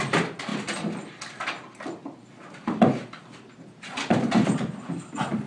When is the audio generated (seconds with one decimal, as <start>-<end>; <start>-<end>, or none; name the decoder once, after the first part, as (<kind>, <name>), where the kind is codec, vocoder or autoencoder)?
none